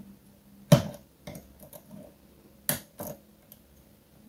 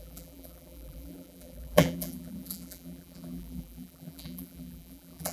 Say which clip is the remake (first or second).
second